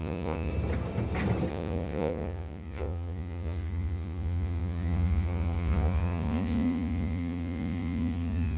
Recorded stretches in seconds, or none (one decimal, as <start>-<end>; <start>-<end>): 0.5-1.5